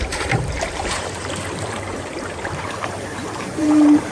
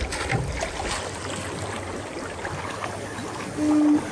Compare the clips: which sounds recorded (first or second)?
second